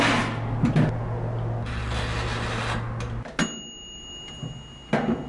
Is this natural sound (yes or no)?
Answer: yes